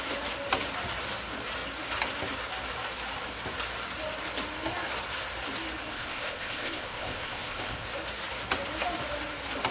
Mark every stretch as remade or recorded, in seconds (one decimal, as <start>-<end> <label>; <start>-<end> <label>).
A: 0.0-5.9 recorded; 5.9-7.9 remade; 7.9-9.7 recorded